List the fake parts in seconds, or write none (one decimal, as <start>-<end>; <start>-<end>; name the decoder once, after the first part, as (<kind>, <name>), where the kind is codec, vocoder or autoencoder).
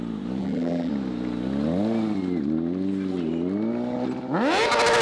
0.4-0.9 (vocoder, BigVGAN v2)